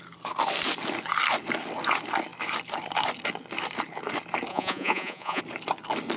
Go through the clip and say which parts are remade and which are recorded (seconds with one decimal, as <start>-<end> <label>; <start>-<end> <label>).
0.0-4.5 recorded; 4.5-5.4 remade; 5.4-6.2 recorded